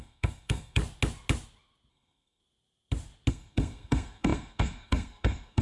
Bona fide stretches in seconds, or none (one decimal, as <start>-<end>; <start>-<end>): 0.8-1.9; 2.4-3.3